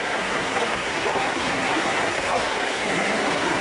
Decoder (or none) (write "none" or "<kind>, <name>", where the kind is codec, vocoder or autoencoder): codec, SNAC